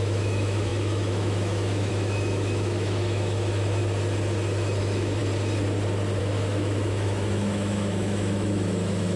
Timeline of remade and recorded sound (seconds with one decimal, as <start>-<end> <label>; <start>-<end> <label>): 0.0-3.8 remade; 3.8-4.8 recorded; 4.8-5.2 remade; 5.2-6.2 recorded; 6.2-9.2 remade

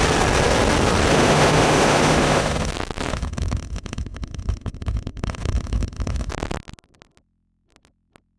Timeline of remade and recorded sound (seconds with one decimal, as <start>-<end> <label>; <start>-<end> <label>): 0.0-1.1 recorded; 1.1-2.7 remade; 2.7-3.1 recorded; 3.1-6.3 remade; 6.3-8.4 recorded

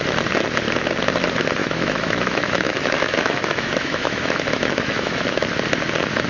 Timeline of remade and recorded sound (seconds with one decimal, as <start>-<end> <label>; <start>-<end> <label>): 0.0-1.6 recorded; 1.6-5.4 remade; 5.4-6.3 recorded

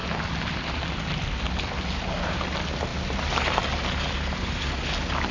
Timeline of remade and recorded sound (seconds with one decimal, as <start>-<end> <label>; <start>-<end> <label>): 0.0-5.3 recorded

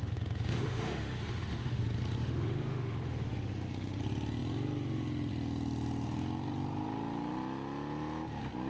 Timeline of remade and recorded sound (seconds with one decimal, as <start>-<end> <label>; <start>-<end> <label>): 0.0-1.8 remade; 1.8-2.2 recorded; 2.2-4.0 remade; 4.0-8.7 recorded

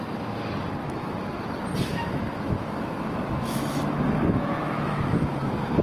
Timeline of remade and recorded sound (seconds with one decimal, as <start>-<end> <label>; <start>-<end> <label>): 0.0-0.8 recorded; 0.8-1.4 remade; 1.4-1.9 recorded; 1.9-5.8 remade

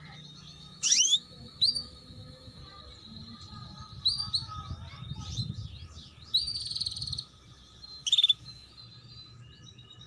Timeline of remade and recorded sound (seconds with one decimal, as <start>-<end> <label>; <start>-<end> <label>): 0.0-0.5 recorded; 0.5-2.6 remade; 2.6-8.0 recorded; 8.0-8.7 remade; 8.7-10.1 recorded

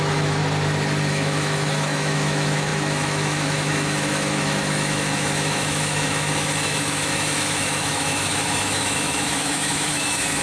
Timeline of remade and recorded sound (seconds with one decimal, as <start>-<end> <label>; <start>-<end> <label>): 0.0-0.4 remade; 0.4-1.1 recorded; 1.1-10.4 remade